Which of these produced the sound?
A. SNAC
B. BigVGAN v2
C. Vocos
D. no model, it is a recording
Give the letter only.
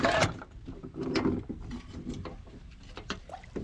D